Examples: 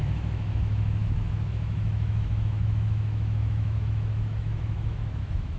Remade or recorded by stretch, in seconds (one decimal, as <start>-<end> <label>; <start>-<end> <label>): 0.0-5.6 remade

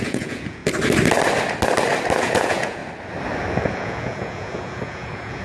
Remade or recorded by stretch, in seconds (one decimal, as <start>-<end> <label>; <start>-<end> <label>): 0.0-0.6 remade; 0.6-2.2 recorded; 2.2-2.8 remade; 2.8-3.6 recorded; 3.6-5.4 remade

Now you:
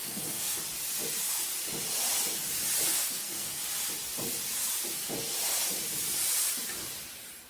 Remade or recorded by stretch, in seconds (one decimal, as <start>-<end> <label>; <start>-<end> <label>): 0.0-0.6 remade; 0.6-2.9 recorded; 2.9-3.6 remade; 3.6-7.5 recorded

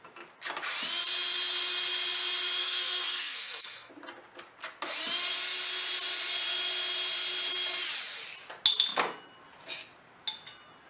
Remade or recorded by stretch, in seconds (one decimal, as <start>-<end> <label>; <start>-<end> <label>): 0.0-2.6 recorded; 2.6-3.9 remade; 3.9-10.9 recorded

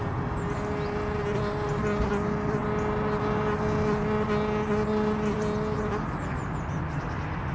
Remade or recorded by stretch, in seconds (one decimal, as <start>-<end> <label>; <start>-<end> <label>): 0.0-7.5 recorded

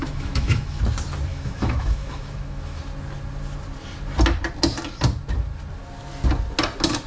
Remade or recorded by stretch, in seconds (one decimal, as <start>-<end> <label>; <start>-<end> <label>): 0.0-0.8 remade; 0.8-1.3 recorded; 1.3-2.8 remade; 2.8-7.1 recorded